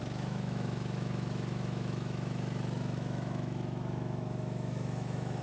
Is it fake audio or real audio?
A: fake